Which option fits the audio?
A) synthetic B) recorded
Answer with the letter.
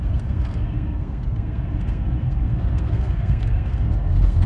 A